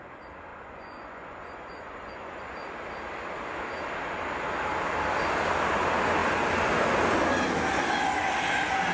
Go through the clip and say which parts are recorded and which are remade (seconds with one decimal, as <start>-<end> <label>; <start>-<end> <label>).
0.0-0.5 recorded; 0.5-2.5 remade; 2.5-8.9 recorded